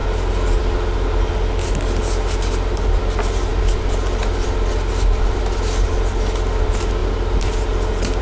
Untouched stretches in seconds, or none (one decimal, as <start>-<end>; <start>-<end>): 0.0-8.2